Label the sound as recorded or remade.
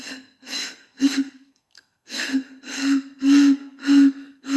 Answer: remade